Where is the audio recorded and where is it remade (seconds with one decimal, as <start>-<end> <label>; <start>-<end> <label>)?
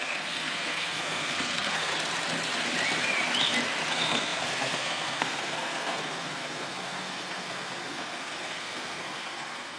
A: 0.0-1.9 remade; 1.9-3.9 recorded; 3.9-9.8 remade